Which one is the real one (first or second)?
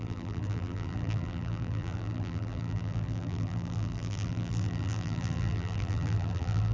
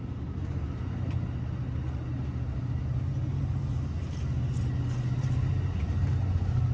second